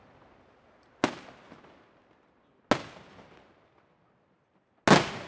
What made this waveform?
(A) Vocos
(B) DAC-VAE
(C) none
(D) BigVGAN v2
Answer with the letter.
C